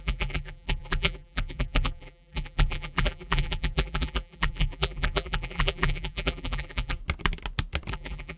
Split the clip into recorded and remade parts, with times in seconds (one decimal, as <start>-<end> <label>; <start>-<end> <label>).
0.0-7.0 remade; 7.0-7.9 recorded; 7.9-8.4 remade